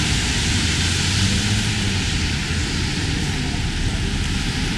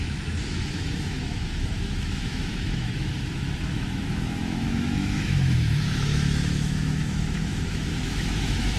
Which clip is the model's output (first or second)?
second